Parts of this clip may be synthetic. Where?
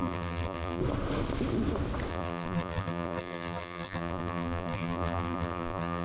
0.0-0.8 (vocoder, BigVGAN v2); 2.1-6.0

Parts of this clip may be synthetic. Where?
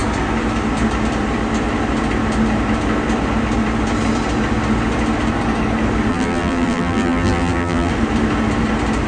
6.1-7.9 (vocoder, BigVGAN v2)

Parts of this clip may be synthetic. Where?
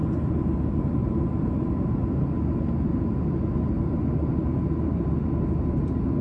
0.0-0.8 (vocoder, BigVGAN v2)